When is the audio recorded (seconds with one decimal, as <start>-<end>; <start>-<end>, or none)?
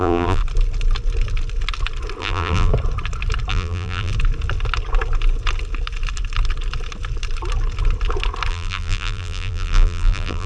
0.4-2.2; 2.7-3.5; 4.1-8.5